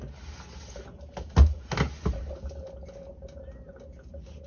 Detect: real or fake real